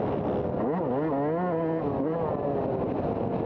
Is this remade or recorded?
recorded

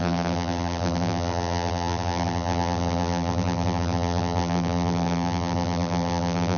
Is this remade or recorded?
remade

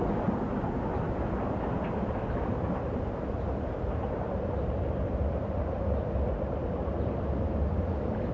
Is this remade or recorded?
recorded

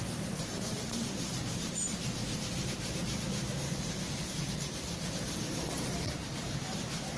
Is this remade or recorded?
remade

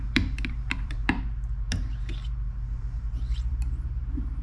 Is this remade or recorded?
remade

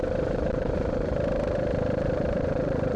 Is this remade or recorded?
remade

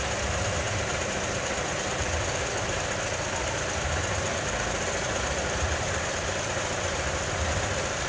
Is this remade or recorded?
remade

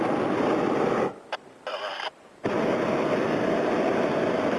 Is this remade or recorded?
remade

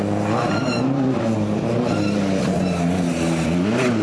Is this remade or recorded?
recorded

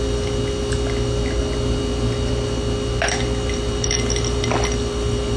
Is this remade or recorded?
recorded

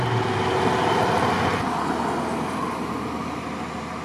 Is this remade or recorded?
recorded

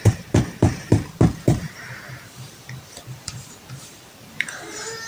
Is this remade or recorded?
remade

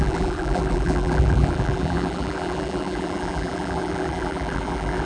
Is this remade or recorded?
remade